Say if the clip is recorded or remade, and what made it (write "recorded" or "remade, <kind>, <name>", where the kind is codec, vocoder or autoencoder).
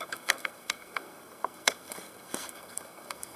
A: remade, codec, SNAC